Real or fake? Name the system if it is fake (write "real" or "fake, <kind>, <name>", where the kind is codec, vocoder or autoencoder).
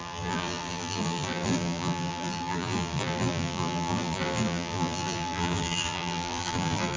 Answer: fake, vocoder, BigVGAN v2